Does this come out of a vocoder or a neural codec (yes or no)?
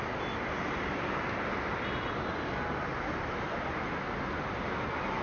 no